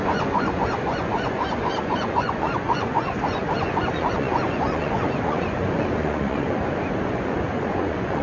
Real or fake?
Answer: fake